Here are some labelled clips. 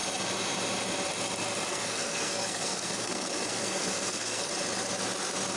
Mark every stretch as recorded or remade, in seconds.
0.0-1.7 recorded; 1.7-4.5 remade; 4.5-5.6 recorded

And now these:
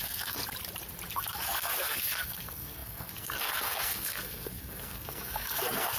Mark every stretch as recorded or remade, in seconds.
0.0-0.4 remade; 0.4-1.1 recorded; 1.1-6.0 remade

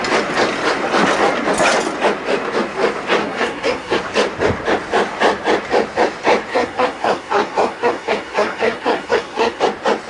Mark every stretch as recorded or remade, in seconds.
0.0-3.2 recorded; 3.2-4.0 remade; 4.0-6.5 recorded; 6.5-9.6 remade; 9.6-10.1 recorded